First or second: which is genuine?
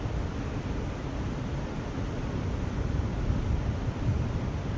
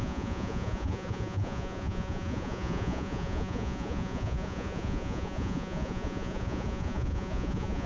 first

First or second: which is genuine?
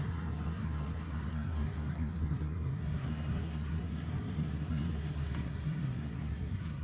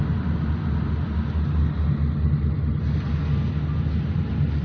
second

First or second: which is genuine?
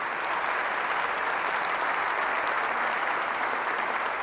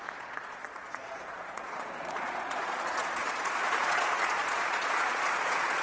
first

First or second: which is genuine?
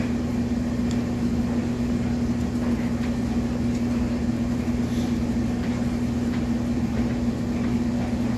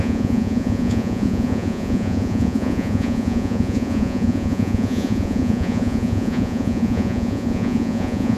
first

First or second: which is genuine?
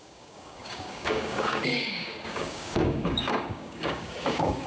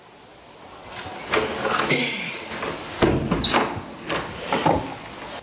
second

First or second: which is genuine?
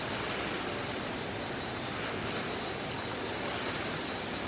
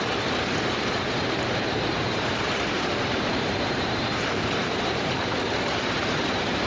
first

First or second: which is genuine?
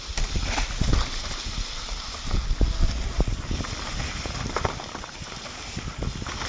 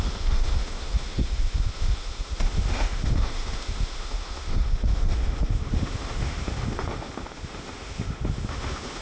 first